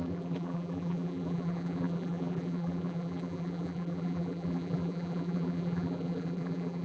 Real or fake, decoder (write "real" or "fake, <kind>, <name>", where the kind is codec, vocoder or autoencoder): fake, vocoder, BigVGAN v2